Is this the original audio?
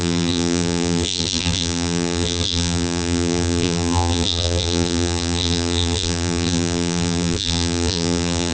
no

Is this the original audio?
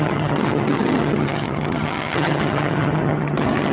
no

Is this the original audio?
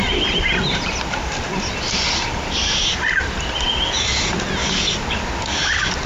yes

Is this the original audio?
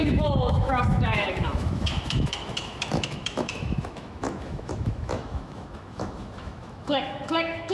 no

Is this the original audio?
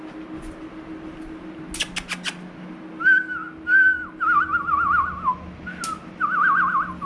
yes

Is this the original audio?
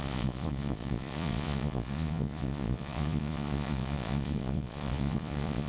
no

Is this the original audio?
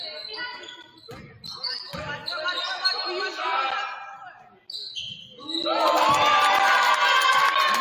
yes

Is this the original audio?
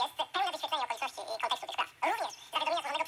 yes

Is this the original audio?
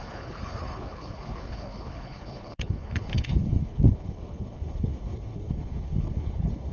no